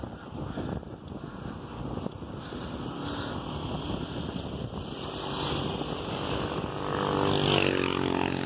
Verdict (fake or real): real